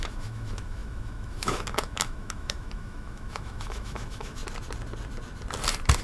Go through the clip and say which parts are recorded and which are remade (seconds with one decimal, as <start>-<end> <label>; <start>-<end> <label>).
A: 0.0-4.4 remade; 4.4-6.0 recorded